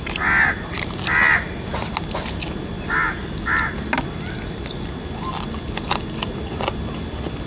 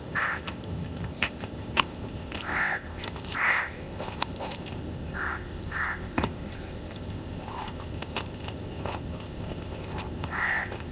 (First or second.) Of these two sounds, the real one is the first